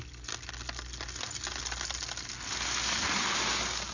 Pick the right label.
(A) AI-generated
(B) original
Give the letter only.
B